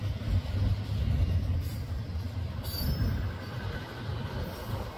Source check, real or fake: real